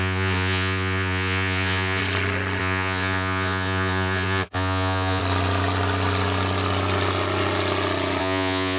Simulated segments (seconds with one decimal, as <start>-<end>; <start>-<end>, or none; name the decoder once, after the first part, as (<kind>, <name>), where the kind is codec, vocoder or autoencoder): 0.0-2.0 (vocoder, Vocos); 2.6-5.2; 8.2-8.8